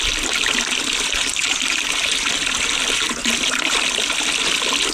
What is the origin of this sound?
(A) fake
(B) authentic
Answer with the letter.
B